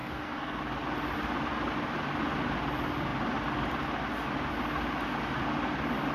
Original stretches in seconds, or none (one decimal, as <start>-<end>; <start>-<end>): 0.6-6.1